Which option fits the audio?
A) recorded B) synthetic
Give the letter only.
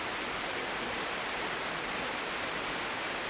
A